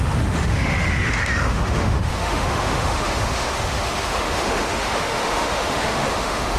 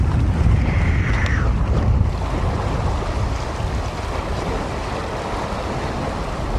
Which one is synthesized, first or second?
first